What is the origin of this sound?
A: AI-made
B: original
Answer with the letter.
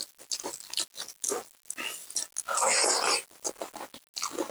B